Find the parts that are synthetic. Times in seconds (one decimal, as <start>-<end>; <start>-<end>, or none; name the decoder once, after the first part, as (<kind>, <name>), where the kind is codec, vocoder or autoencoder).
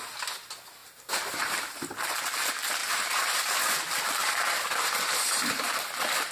0.8-2.0 (vocoder, BigVGAN v2); 2.8-3.4; 4.2-5.6